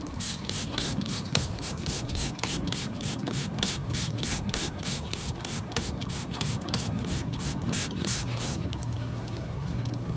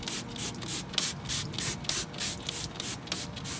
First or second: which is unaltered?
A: second